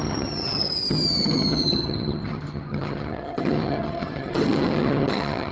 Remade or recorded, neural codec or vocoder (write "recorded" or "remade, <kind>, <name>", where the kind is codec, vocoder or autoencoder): remade, vocoder, HiFi-GAN